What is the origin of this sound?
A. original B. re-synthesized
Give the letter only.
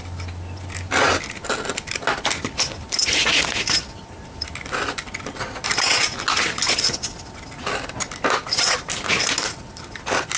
A